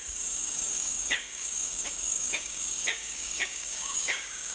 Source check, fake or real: fake